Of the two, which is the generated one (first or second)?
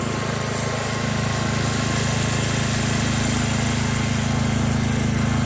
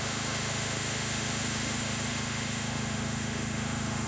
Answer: second